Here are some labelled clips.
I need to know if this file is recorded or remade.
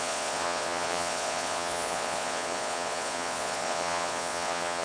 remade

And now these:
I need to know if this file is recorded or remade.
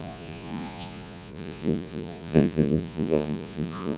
remade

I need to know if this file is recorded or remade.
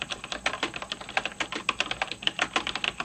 recorded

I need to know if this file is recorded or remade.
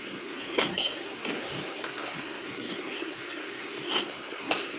remade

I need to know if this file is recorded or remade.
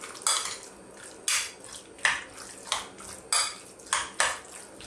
recorded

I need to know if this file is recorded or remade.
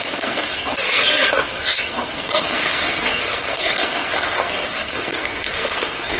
remade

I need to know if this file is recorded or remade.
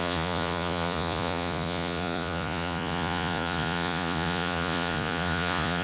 remade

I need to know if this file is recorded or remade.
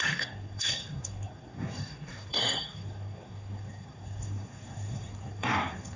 remade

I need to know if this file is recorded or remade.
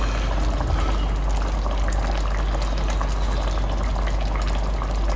recorded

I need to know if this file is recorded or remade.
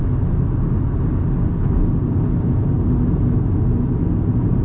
recorded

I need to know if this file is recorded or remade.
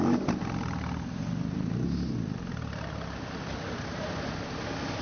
recorded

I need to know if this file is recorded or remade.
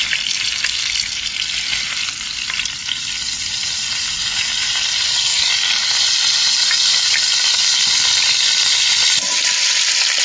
remade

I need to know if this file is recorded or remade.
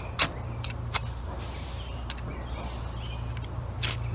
recorded